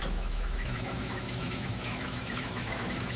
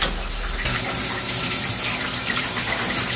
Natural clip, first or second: second